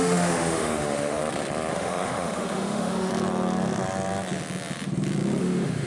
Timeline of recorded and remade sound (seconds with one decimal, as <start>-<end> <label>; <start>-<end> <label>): 0.0-1.2 remade; 1.2-1.7 recorded; 1.7-3.1 remade; 3.1-5.4 recorded; 5.4-5.9 remade